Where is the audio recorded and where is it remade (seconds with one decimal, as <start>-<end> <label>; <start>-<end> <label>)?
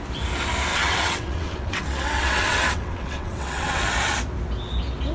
0.0-0.7 recorded; 0.7-3.8 remade; 3.8-5.1 recorded